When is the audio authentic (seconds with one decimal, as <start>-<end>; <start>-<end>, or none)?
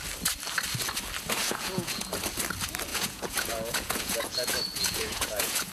0.0-1.4; 2.1-2.9